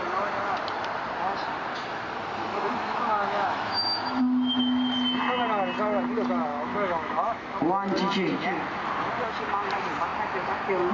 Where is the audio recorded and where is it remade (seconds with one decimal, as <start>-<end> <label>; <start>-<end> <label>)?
0.0-2.5 recorded; 2.5-4.2 remade; 4.2-6.5 recorded; 6.5-7.6 remade; 7.6-10.9 recorded